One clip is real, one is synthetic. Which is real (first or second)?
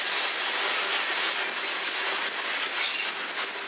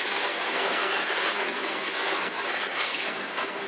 first